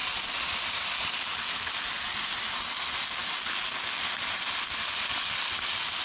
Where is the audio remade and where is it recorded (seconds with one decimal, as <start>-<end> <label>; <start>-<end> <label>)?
0.0-6.0 recorded